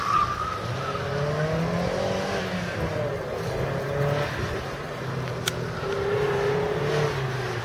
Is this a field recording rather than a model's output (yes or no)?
yes